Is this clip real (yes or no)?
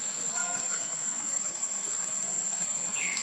no